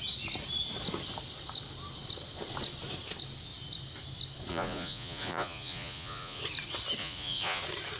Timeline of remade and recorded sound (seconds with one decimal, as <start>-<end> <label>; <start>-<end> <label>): 0.0-4.5 recorded; 4.5-6.4 remade; 6.4-7.0 recorded; 7.0-7.6 remade; 7.6-8.0 recorded